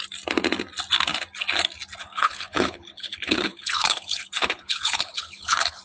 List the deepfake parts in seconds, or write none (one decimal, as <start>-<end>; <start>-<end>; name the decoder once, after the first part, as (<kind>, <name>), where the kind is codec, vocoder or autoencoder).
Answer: 2.0-5.8 (codec, HILCodec)